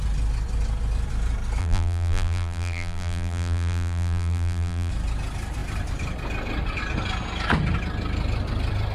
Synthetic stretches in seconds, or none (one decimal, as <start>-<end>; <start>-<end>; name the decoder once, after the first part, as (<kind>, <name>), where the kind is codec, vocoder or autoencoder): 1.6-4.9 (vocoder, BigVGAN v2)